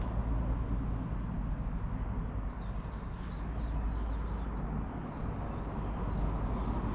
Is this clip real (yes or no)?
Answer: yes